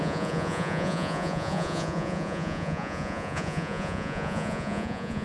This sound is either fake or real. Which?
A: fake